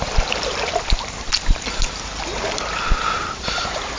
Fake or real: real